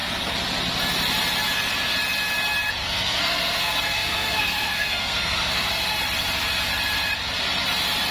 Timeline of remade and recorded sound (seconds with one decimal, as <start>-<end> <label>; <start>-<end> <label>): 0.0-2.8 recorded; 2.8-6.0 remade; 6.0-8.1 recorded